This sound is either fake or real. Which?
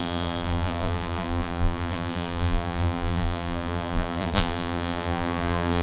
fake